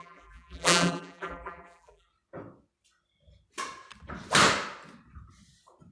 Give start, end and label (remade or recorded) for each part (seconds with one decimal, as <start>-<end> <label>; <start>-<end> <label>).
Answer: 0.0-2.1 remade; 2.1-5.9 recorded